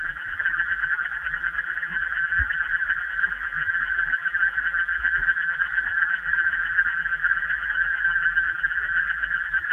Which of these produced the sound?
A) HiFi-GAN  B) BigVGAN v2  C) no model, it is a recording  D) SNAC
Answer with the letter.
B